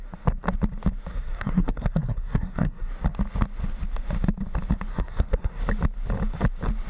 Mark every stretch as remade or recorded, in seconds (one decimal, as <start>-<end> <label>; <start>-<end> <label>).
0.0-1.1 recorded; 1.1-2.9 remade; 2.9-4.9 recorded; 4.9-5.6 remade; 5.6-6.9 recorded